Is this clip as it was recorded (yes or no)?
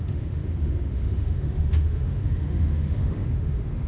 no